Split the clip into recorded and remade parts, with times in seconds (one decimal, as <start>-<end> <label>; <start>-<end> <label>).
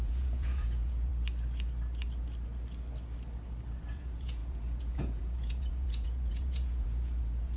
0.0-1.1 remade; 1.1-3.9 recorded; 3.9-7.6 remade